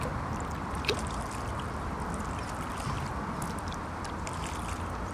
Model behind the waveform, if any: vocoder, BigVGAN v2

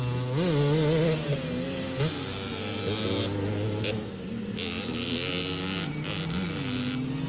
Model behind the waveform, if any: none